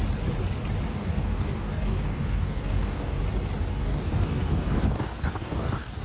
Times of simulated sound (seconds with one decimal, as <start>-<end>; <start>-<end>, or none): 0.9-3.2; 3.7-6.0